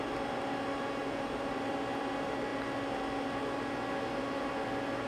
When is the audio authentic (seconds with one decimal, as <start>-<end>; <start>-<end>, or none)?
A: 0.0-1.0; 1.7-5.1